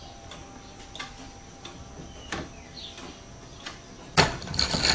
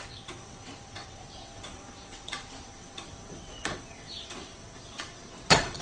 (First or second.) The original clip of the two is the first